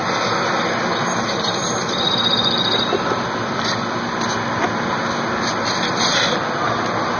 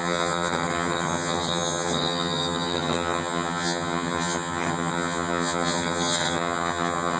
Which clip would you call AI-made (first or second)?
second